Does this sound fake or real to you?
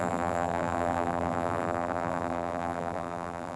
fake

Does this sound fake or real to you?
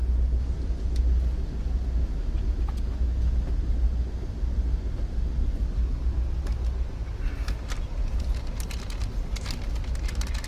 real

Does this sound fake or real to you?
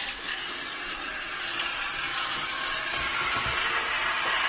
real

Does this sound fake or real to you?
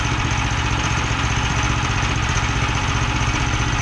fake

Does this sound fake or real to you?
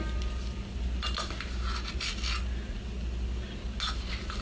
real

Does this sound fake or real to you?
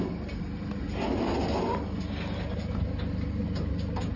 real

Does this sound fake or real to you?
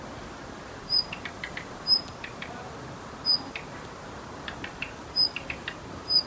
fake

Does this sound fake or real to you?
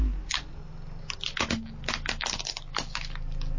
real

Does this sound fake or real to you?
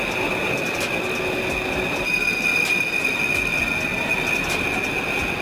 real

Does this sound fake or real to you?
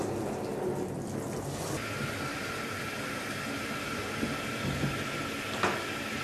real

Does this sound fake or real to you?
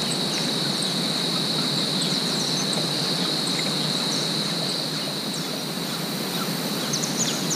real